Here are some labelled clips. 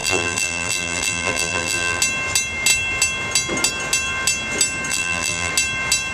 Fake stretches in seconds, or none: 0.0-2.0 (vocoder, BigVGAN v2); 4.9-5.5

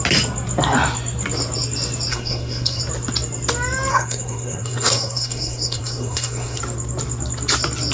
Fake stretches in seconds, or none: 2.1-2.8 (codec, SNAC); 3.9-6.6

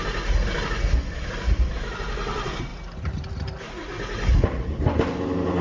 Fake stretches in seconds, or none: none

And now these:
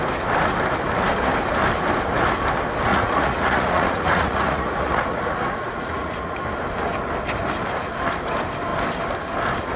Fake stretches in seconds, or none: 2.9-6.4 (vocoder, Vocos)